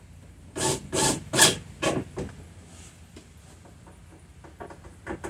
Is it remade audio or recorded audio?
recorded